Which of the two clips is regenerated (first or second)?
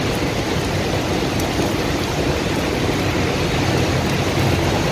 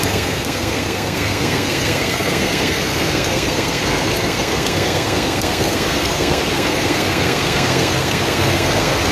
second